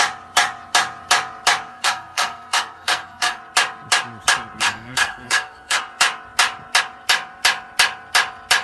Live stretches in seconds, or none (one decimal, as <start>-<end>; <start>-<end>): 0.0-1.7; 3.4-4.6; 5.8-8.6